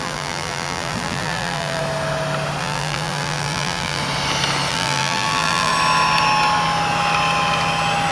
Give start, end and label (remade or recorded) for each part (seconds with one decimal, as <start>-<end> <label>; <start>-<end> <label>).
0.0-1.8 remade; 1.8-2.6 recorded; 2.6-4.0 remade; 4.0-4.7 recorded; 4.7-5.7 remade; 5.7-8.1 recorded